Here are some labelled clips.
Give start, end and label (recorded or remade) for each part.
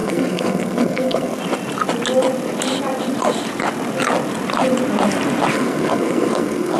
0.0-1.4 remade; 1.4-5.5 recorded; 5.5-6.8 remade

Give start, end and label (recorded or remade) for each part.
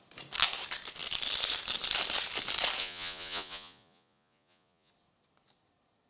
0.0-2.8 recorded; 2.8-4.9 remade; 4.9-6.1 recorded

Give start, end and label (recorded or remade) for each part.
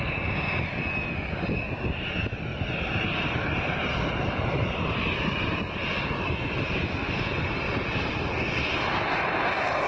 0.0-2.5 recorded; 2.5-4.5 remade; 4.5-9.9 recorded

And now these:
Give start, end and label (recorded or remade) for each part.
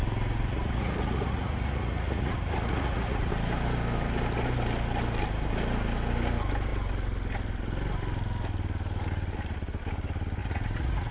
0.0-3.3 remade; 3.3-10.4 recorded; 10.4-11.1 remade